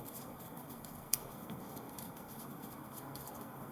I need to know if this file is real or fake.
fake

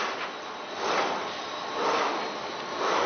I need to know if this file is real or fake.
real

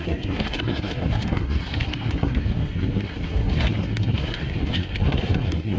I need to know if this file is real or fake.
fake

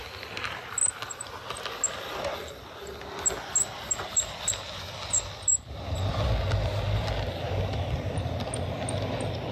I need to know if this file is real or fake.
real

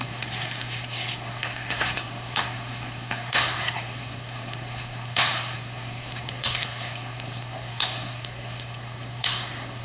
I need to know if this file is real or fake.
fake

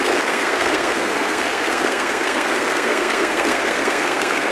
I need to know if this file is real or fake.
fake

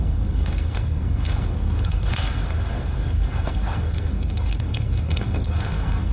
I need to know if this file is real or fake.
fake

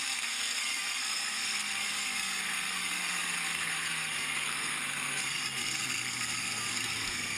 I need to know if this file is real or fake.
fake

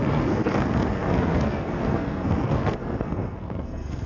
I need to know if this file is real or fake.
fake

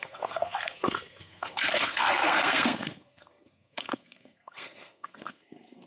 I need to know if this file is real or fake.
fake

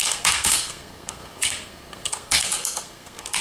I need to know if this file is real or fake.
fake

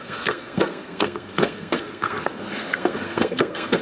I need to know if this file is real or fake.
fake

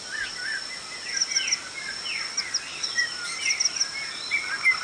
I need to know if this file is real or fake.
real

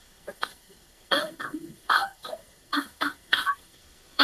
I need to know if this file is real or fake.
fake